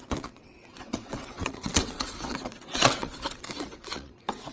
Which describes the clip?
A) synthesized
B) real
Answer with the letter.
A